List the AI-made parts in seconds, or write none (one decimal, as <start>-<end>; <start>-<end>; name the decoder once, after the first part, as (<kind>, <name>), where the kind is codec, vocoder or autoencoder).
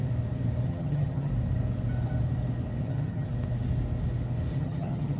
0.6-1.3 (vocoder, HiFi-GAN); 2.8-3.3; 4.5-5.2